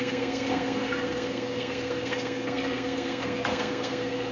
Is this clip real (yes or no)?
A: no